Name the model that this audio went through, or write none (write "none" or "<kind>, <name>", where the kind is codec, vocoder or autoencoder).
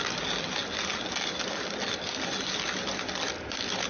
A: none